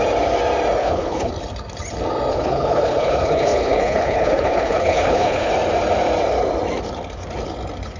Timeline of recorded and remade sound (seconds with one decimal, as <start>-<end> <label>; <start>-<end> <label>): 0.0-0.8 recorded; 0.8-1.3 remade; 1.3-2.3 recorded; 2.3-5.5 remade; 5.5-8.0 recorded